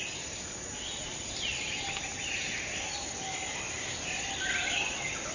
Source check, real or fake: real